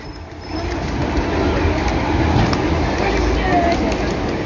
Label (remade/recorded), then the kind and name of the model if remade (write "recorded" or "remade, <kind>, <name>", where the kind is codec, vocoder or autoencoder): recorded